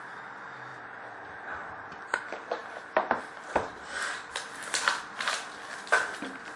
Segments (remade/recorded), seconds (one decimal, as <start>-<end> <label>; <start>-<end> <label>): 0.0-6.6 recorded